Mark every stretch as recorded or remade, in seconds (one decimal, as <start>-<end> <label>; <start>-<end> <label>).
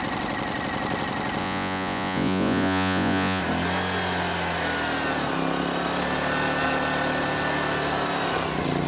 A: 0.0-1.4 recorded; 1.4-3.4 remade; 3.4-8.9 recorded